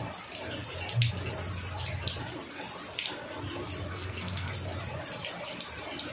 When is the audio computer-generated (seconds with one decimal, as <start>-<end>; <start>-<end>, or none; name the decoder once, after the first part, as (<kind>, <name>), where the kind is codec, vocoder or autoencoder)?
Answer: 3.9-4.5 (codec, SNAC)